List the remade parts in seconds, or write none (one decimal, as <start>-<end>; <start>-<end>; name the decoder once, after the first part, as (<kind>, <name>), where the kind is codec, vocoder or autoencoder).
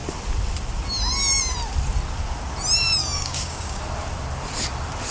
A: 3.0-3.8 (codec, DAC)